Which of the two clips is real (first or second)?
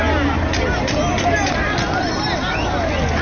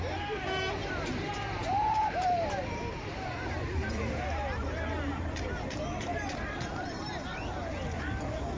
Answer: first